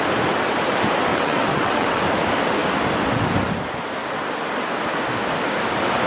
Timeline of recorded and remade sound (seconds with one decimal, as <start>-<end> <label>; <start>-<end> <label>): 0.0-1.1 recorded; 1.1-2.0 remade; 2.0-6.1 recorded